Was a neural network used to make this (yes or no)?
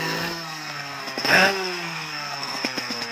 yes